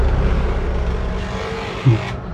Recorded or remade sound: recorded